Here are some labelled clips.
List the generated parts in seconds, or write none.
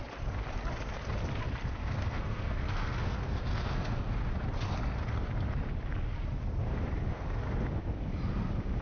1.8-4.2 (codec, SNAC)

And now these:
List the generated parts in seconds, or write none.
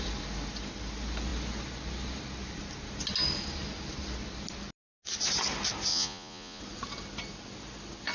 5.9-6.6 (vocoder, Vocos)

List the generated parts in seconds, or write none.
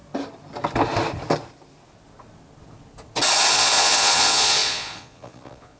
3.5-5.8 (vocoder, Vocos)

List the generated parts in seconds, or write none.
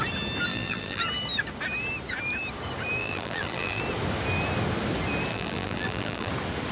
0.5-1.0 (vocoder, BigVGAN v2); 3.0-3.8; 5.3-6.3